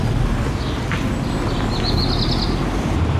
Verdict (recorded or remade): recorded